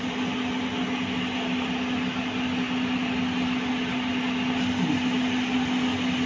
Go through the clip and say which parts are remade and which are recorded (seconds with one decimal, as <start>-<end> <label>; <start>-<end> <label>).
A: 0.0-6.3 recorded